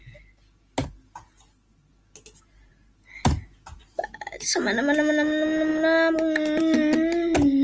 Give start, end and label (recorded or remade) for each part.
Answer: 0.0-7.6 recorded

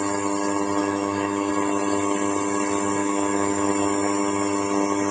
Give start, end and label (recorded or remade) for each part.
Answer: 0.0-0.8 recorded; 0.8-1.5 remade; 1.5-3.0 recorded; 3.0-3.7 remade; 3.7-5.1 recorded

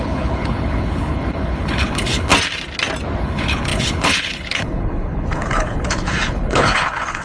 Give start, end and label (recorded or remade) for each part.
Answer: 0.0-2.3 remade; 2.3-3.2 recorded; 3.2-7.2 remade

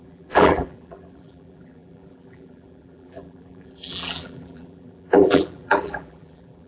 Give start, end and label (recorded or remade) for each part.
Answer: 0.0-6.7 remade

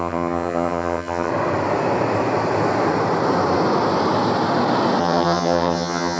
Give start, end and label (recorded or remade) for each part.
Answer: 0.0-1.3 remade; 1.3-5.0 recorded; 5.0-6.2 remade

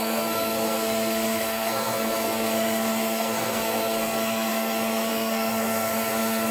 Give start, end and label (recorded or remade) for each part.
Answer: 0.0-6.5 remade

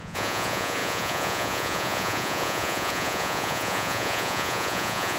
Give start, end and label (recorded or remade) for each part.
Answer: 0.0-5.2 remade